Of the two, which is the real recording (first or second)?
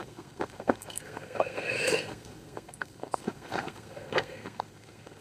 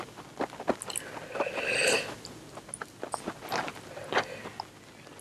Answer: second